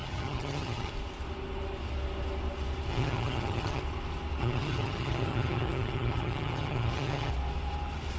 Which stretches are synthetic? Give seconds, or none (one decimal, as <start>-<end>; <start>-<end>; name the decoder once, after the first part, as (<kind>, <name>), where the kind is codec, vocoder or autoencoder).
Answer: 0.0-0.9 (vocoder, HiFi-GAN); 2.9-3.8; 4.4-7.3